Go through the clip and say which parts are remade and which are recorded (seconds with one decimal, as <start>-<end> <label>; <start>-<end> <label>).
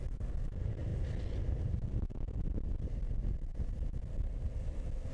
0.0-5.1 recorded